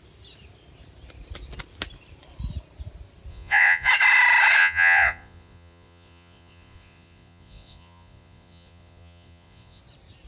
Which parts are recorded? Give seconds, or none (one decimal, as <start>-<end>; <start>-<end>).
0.0-3.3; 3.9-4.6; 9.8-10.3

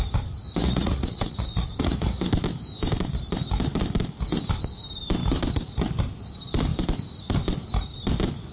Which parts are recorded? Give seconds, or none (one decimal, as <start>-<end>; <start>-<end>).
0.0-0.6; 2.2-8.5